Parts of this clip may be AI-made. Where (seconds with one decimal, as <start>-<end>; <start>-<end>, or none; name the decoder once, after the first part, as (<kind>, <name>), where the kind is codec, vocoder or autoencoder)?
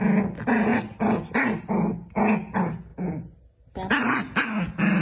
none